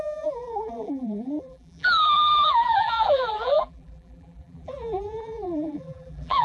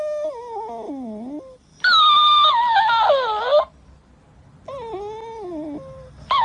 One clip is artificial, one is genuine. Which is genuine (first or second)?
second